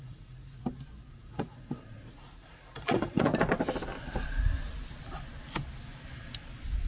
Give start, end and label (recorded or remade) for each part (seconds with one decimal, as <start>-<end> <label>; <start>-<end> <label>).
0.0-0.6 remade; 0.6-1.1 recorded; 1.1-3.3 remade; 3.3-6.9 recorded